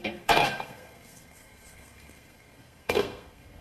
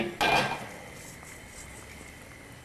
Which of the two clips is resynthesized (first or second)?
first